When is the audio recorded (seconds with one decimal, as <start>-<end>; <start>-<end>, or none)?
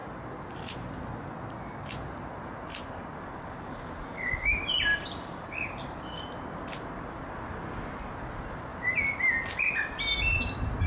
0.0-10.9